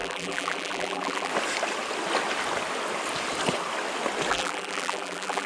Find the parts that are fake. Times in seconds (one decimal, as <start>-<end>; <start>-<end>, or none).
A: 0.0-1.3; 4.3-5.5

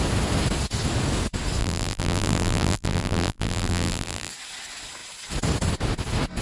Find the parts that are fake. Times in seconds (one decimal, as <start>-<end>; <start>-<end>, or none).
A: 1.6-4.3

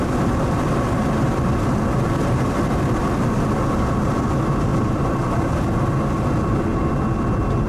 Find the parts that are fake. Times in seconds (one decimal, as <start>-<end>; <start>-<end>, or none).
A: 4.7-5.4